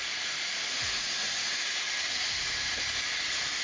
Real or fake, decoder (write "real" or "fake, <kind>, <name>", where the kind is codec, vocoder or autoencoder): real